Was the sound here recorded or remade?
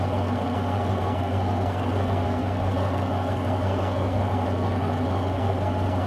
remade